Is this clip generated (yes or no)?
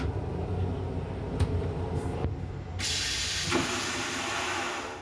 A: no